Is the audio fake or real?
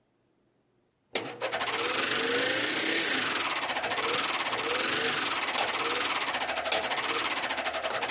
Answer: real